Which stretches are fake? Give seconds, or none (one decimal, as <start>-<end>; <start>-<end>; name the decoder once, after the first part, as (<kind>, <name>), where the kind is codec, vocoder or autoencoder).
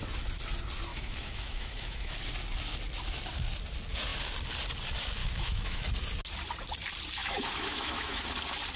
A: 0.9-2.2 (autoencoder, DAC-VAE); 5.2-5.8; 7.2-8.3